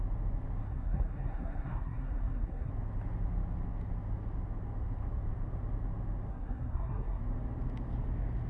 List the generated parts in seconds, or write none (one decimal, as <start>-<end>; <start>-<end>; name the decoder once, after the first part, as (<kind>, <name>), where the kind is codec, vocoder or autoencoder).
0.6-2.7 (codec, SNAC); 6.3-7.2

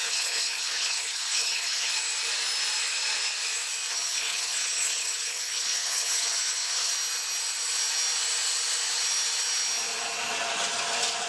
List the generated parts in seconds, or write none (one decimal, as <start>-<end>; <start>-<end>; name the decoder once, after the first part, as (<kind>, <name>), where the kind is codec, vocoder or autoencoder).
0.0-1.9 (codec, HILCodec); 3.9-6.9

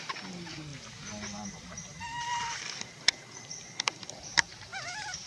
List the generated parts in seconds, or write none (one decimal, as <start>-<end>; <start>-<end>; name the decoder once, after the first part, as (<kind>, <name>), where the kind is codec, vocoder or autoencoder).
0.0-0.7 (vocoder, BigVGAN v2); 1.5-5.3

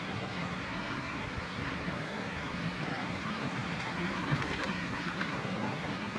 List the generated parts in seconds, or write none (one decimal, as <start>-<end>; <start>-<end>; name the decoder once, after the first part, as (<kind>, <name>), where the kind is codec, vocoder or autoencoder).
0.0-6.2 (codec, SNAC)

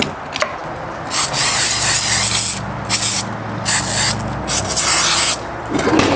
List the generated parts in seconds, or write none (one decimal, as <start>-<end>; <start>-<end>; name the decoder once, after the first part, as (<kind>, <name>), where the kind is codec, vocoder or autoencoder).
none

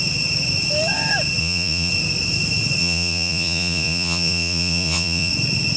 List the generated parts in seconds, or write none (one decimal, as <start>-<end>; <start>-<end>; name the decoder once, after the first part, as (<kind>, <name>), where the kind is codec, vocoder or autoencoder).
1.4-1.9 (vocoder, Vocos); 2.8-5.3

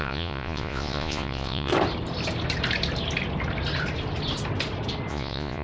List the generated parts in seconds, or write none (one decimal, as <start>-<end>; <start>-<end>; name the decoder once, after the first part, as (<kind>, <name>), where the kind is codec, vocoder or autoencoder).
0.0-1.7 (vocoder, Vocos); 5.1-5.6

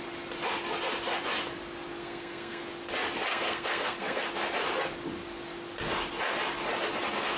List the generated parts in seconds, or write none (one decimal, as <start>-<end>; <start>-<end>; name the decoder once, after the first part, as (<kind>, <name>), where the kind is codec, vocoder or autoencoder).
2.0-2.6 (codec, SNAC); 3.3-4.3